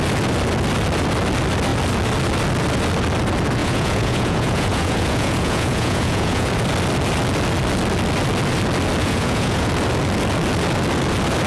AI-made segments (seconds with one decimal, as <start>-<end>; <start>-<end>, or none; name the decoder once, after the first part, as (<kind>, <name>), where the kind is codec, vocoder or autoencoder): 3.6-6.5 (vocoder, Vocos); 9.0-9.7